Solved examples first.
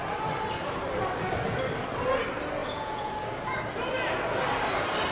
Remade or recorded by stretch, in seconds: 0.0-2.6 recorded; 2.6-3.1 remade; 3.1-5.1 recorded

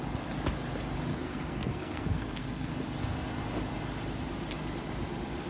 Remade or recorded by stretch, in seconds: 0.0-1.1 recorded; 1.1-2.7 remade; 2.7-5.5 recorded

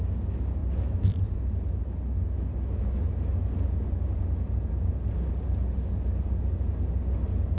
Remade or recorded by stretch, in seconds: 0.0-0.6 recorded; 0.6-1.8 remade; 1.8-7.6 recorded

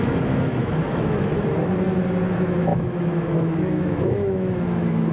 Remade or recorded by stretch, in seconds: 0.0-1.3 remade; 1.3-2.3 recorded; 2.3-5.1 remade

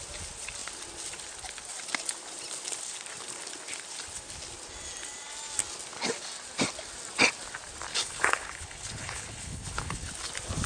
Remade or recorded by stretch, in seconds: 0.0-7.9 recorded; 7.9-10.1 remade; 10.1-10.7 recorded